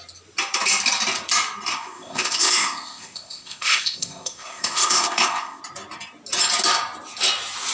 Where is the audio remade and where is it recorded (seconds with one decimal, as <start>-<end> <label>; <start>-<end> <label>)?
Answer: 0.0-1.7 recorded; 1.7-5.6 remade; 5.6-7.7 recorded